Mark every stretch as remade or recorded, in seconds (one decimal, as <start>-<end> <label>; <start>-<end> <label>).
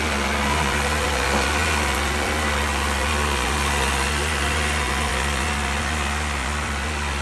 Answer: 0.0-7.2 remade